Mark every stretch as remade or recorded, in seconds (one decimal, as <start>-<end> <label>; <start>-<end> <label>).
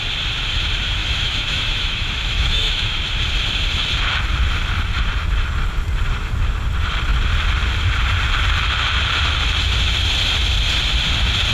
0.0-1.0 recorded; 1.0-3.0 remade; 3.0-11.5 recorded